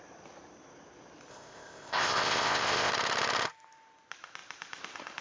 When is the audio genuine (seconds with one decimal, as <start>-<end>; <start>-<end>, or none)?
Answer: 0.0-1.3; 2.9-5.2